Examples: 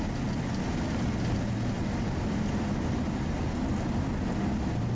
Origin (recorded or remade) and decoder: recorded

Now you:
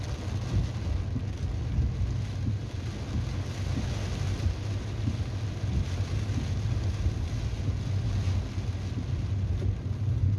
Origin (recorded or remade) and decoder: recorded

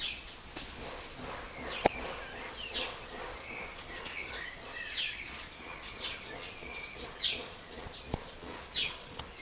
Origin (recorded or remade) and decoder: remade, vocoder, Vocos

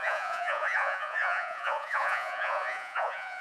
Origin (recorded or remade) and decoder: remade, vocoder, Vocos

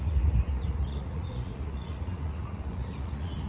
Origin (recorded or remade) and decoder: remade, vocoder, Vocos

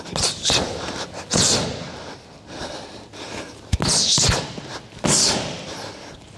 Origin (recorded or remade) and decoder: recorded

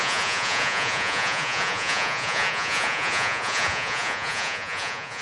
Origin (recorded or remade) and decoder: remade, vocoder, Vocos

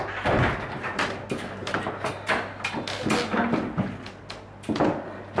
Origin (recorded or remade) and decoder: recorded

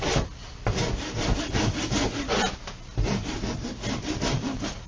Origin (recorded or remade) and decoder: recorded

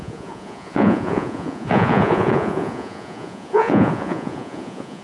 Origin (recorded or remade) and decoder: remade, vocoder, Vocos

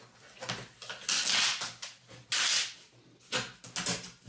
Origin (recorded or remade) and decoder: recorded